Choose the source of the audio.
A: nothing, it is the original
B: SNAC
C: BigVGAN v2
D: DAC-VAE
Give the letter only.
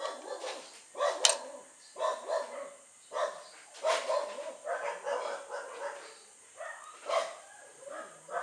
A